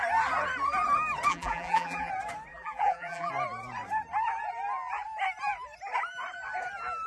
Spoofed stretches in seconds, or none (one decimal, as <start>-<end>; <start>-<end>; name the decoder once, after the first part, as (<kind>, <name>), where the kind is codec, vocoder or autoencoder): 1.3-2.1 (vocoder, BigVGAN v2); 2.5-3.3